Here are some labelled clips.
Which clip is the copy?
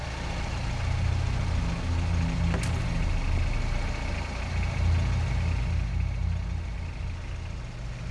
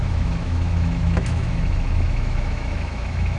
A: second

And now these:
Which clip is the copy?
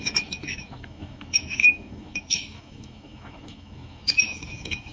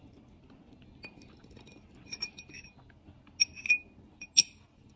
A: first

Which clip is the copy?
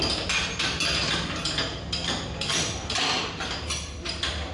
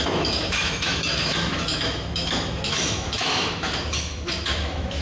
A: second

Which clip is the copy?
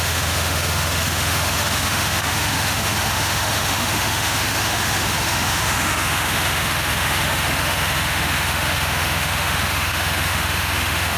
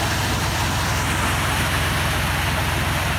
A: first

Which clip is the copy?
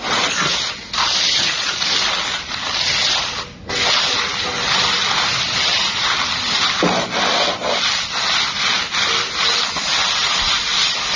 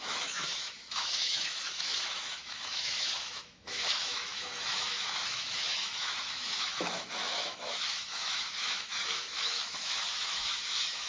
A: second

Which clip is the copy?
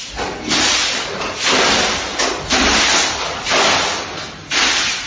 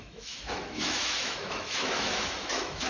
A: second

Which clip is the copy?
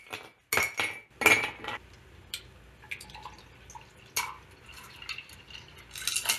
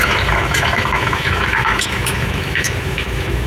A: second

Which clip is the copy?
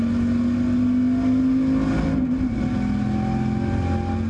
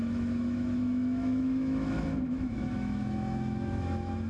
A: second